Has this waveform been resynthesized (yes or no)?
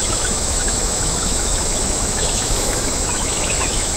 yes